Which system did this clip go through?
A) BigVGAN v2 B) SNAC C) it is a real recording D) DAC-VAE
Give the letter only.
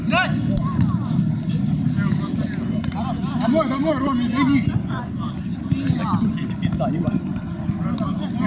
C